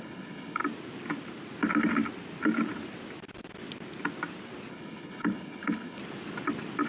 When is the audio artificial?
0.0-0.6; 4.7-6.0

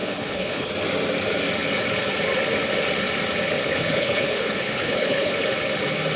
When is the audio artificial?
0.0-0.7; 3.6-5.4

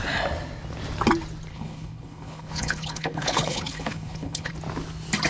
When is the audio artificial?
1.5-4.5

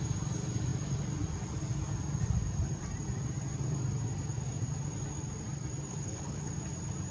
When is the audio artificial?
5.9-6.5

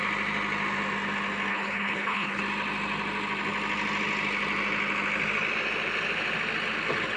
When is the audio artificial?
1.5-2.4

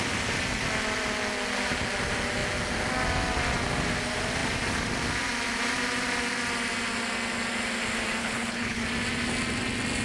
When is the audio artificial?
8.2-8.8

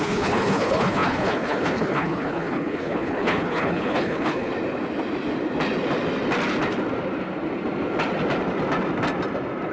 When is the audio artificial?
0.0-4.5